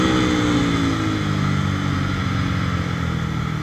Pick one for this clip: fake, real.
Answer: real